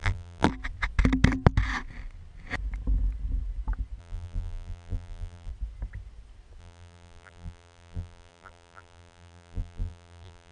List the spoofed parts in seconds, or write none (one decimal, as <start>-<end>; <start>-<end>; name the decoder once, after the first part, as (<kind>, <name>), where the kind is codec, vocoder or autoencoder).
0.0-0.5 (vocoder, BigVGAN v2); 4.0-5.5; 6.6-10.5

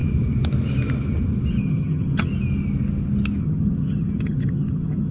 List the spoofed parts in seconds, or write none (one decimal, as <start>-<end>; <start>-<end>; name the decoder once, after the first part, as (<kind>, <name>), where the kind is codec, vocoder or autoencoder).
1.6-2.3 (vocoder, HiFi-GAN); 3.4-5.1